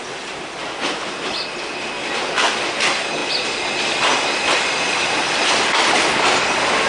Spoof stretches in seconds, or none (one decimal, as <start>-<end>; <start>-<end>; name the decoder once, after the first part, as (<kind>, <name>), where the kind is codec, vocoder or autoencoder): none